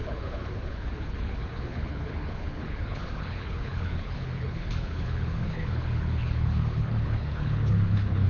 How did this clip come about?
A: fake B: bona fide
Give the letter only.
A